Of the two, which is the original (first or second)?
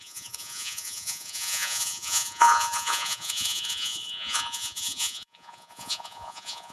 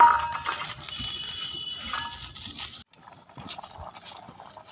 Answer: second